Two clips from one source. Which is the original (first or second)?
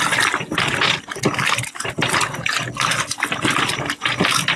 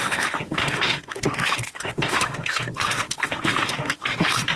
first